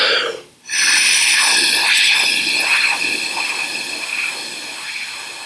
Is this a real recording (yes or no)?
yes